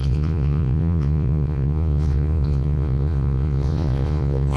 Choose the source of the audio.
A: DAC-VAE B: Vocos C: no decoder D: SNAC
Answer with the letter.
B